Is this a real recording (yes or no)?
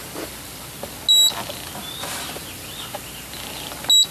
yes